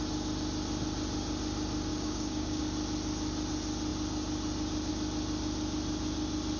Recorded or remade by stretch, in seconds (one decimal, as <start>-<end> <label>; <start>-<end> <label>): 0.0-1.9 recorded; 1.9-2.6 remade; 2.6-6.6 recorded